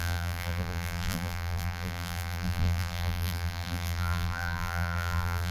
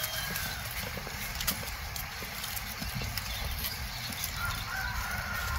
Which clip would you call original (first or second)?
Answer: second